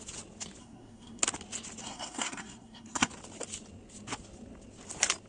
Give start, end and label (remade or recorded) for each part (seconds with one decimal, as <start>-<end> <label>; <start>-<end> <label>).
0.0-0.6 recorded; 0.6-1.2 remade; 1.2-1.8 recorded; 1.8-3.1 remade; 3.1-5.3 recorded